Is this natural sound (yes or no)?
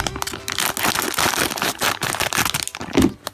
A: yes